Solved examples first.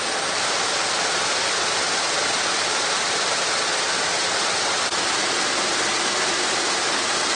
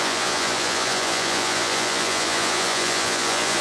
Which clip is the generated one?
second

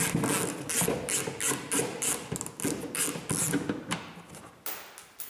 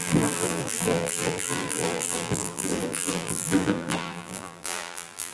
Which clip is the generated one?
second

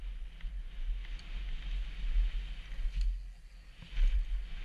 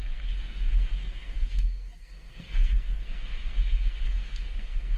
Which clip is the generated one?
second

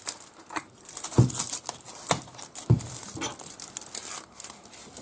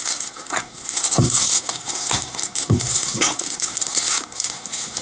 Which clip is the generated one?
second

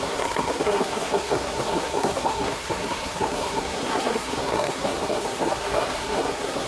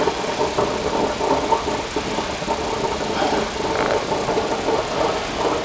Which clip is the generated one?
first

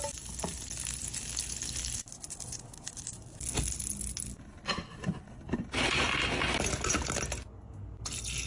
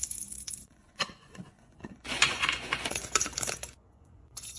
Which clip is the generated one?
second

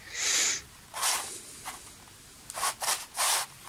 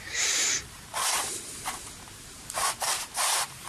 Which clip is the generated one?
second